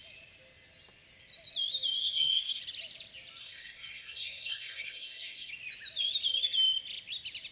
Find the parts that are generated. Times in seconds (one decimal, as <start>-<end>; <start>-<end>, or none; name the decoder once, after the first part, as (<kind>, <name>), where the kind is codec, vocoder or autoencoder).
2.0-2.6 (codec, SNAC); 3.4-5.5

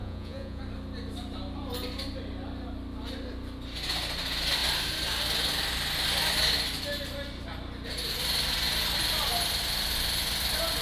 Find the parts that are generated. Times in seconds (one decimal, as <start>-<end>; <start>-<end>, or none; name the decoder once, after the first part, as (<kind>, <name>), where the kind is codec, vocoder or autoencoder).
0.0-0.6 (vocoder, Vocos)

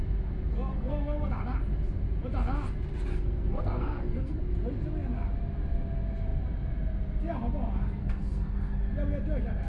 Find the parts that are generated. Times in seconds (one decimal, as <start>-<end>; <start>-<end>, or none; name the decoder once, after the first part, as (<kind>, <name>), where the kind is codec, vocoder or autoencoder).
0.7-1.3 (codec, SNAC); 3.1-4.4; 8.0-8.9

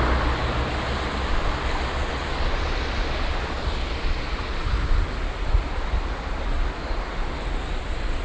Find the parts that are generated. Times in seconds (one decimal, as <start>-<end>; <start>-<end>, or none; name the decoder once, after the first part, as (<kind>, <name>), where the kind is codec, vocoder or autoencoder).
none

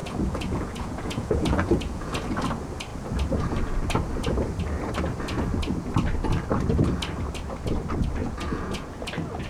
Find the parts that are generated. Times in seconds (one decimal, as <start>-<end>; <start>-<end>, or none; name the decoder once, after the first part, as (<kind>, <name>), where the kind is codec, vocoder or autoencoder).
0.0-2.4 (vocoder, Vocos); 8.2-8.9